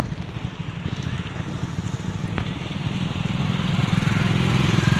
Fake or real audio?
real